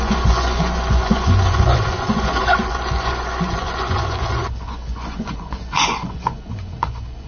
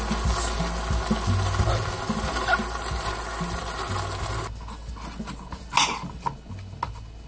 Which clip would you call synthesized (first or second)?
first